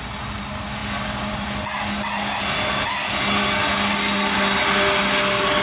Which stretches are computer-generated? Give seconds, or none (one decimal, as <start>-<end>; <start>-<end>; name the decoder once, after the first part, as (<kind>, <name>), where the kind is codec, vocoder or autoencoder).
none